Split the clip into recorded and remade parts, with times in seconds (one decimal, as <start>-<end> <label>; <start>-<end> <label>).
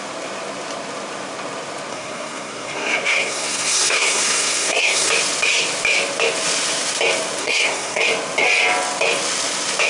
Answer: 0.0-1.9 recorded; 1.9-5.1 remade; 5.1-7.4 recorded; 7.4-8.0 remade; 8.0-9.9 recorded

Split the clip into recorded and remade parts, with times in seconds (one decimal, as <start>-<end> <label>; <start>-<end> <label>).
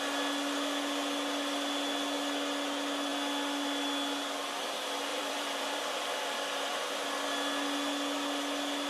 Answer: 0.0-5.1 recorded; 5.1-6.9 remade; 6.9-8.9 recorded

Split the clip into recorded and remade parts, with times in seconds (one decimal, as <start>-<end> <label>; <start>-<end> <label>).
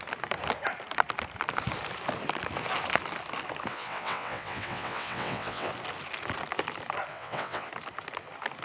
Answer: 0.0-3.7 recorded; 3.7-5.7 remade; 5.7-7.1 recorded; 7.1-7.7 remade; 7.7-8.6 recorded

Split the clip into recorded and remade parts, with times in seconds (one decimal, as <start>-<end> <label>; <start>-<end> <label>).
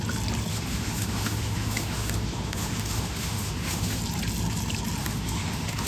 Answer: 0.0-0.5 recorded; 0.5-4.0 remade; 4.0-5.0 recorded; 5.0-5.9 remade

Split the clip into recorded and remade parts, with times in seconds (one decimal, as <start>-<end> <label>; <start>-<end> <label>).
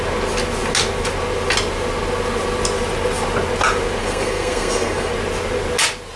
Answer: 0.0-4.0 recorded; 4.0-5.1 remade; 5.1-6.2 recorded